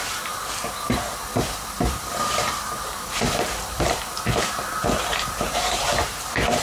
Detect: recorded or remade remade